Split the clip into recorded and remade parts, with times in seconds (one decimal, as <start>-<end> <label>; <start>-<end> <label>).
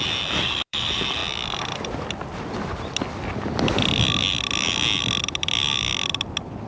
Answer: 0.0-1.2 remade; 1.2-5.2 recorded; 5.2-5.9 remade; 5.9-6.7 recorded